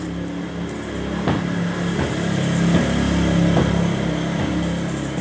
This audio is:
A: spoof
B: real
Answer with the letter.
B